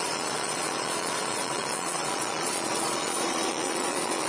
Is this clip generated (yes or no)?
yes